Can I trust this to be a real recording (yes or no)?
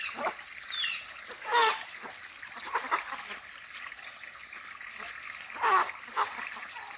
yes